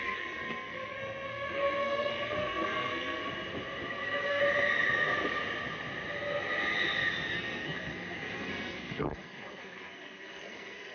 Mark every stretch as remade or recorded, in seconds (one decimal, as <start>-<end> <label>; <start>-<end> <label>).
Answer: 0.0-3.2 remade; 3.2-3.9 recorded; 3.9-4.4 remade; 4.4-7.3 recorded; 7.3-10.9 remade